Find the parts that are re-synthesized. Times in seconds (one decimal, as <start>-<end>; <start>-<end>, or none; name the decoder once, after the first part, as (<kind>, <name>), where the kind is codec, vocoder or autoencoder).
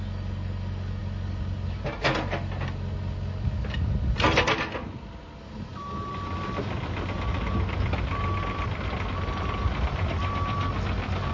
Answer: none